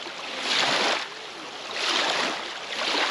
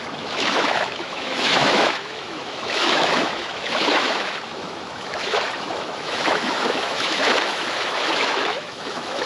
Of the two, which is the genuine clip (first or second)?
first